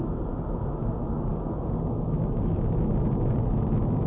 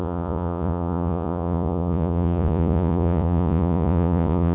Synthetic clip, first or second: second